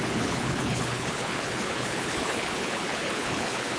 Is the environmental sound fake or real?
fake